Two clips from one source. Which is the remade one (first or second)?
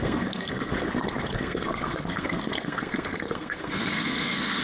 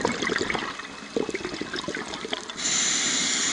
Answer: first